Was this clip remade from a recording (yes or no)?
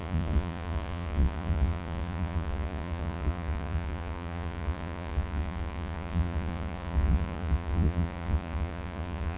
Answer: yes